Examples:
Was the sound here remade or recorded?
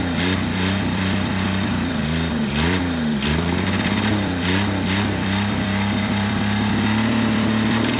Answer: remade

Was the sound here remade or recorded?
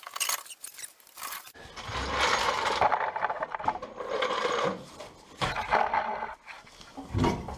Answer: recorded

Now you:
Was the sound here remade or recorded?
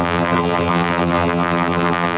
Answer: remade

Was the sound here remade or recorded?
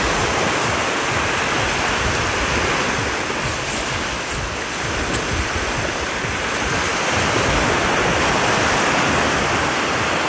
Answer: recorded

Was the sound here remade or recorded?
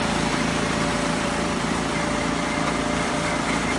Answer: remade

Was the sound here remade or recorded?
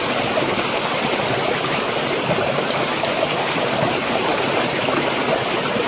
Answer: remade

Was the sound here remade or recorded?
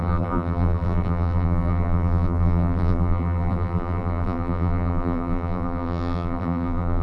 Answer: remade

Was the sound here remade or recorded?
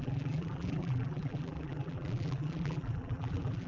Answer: remade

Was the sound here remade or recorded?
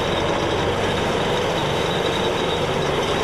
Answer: recorded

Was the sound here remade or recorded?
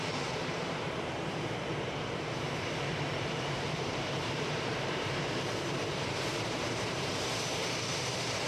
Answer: remade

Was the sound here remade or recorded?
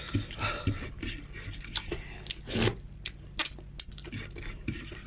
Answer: remade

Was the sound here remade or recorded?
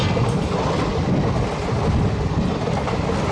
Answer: recorded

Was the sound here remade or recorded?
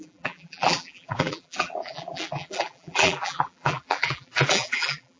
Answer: remade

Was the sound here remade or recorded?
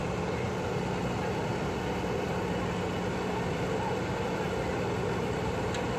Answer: recorded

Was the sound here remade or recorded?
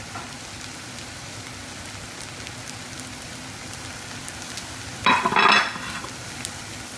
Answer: recorded